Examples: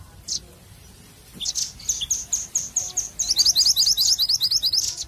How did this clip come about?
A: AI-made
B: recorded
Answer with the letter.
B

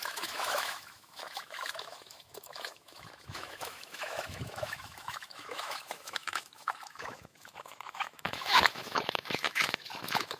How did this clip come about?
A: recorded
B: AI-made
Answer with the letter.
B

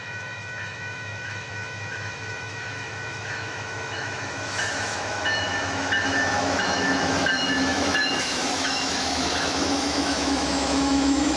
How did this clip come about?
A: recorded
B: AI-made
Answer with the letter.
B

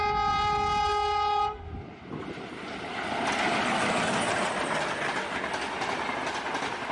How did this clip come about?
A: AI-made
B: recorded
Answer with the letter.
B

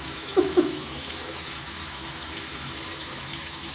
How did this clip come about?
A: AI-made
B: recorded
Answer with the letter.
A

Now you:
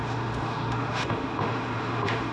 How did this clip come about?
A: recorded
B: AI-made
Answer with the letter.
B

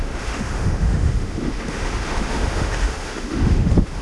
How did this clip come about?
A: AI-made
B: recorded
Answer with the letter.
A